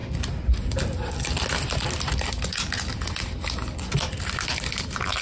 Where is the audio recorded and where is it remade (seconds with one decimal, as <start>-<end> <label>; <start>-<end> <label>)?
0.0-5.2 recorded